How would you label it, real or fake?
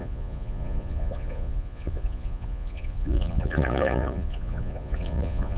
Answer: fake